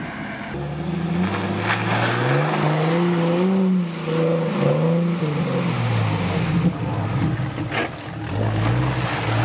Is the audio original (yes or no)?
yes